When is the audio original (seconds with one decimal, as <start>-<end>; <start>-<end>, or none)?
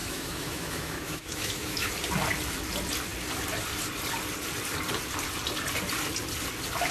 1.9-6.9